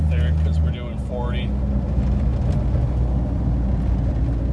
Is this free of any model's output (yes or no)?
yes